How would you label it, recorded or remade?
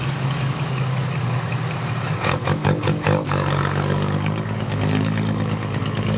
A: remade